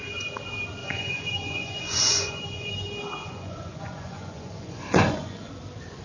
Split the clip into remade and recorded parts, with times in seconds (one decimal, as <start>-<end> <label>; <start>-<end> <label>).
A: 0.0-0.8 recorded; 0.8-2.7 remade; 2.7-3.2 recorded; 3.2-5.5 remade; 5.5-6.0 recorded